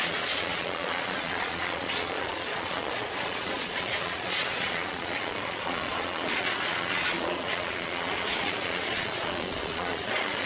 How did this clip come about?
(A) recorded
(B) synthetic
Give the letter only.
B